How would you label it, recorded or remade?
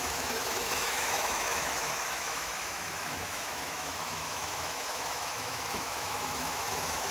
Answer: remade